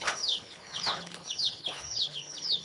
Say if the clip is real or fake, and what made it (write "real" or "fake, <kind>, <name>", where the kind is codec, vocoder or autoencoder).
fake, codec, HILCodec